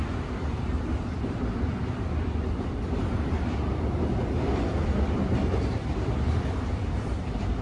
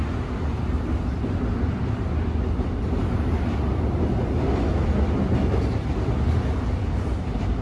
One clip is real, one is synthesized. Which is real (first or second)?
second